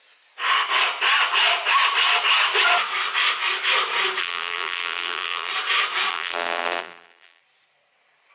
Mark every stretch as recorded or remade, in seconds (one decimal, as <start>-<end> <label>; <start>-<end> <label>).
0.0-4.2 recorded; 4.2-5.5 remade; 5.5-6.1 recorded; 6.1-7.4 remade; 7.4-8.3 recorded